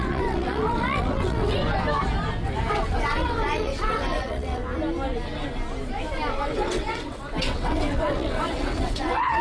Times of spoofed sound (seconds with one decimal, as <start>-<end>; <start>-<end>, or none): 0.0-1.6; 2.7-4.6; 6.3-9.4

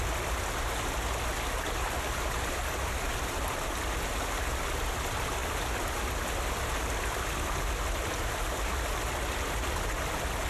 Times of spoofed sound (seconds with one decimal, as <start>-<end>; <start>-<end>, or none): none

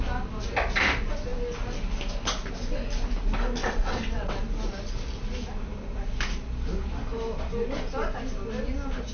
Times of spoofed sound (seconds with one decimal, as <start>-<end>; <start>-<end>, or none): 3.6-4.4

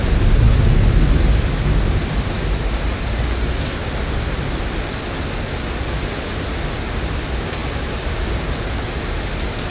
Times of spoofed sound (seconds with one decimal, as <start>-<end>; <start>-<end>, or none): none

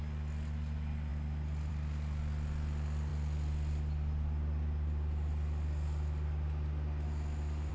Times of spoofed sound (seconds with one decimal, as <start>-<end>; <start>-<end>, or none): none